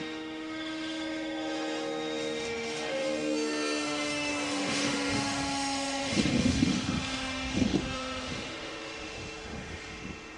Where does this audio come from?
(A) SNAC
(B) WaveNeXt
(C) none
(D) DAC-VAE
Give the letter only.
D